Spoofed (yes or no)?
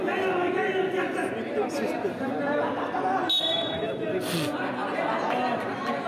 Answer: no